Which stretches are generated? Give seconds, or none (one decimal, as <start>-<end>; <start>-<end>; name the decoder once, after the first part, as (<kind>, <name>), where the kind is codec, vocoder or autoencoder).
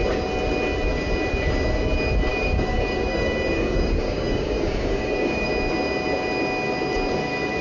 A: 2.3-5.5 (codec, DAC)